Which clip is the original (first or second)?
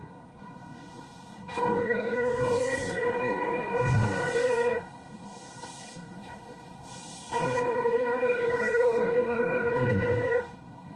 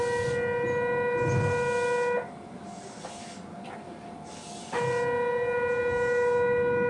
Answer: second